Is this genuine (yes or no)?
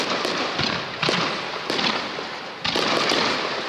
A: yes